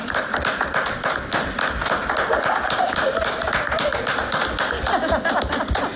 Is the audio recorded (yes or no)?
yes